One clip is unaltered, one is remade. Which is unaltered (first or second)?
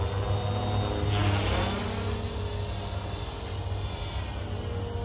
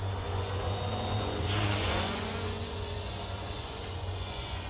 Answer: first